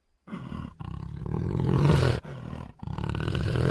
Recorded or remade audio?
recorded